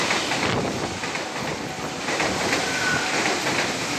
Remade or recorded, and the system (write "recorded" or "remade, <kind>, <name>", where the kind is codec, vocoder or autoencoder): recorded